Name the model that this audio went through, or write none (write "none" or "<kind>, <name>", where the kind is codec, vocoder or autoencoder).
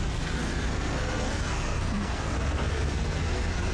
codec, SNAC